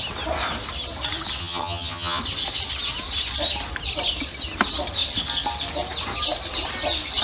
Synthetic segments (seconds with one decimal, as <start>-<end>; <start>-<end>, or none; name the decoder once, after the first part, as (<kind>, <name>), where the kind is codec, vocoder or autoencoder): 1.4-2.2 (vocoder, HiFi-GAN)